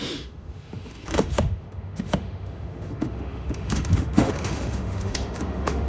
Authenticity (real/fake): fake